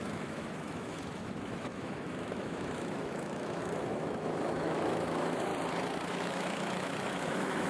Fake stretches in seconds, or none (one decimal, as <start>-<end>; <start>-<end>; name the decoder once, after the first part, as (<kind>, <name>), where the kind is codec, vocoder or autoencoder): 0.0-5.5 (autoencoder, DAC-VAE); 6.1-7.7